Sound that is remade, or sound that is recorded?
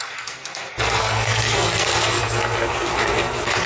remade